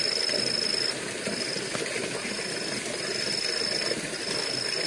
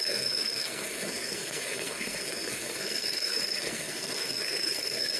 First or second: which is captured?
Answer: first